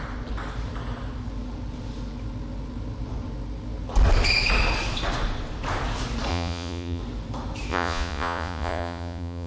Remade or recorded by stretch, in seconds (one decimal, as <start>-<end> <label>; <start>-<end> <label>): 0.0-6.3 recorded; 6.3-7.0 remade; 7.0-7.7 recorded; 7.7-9.5 remade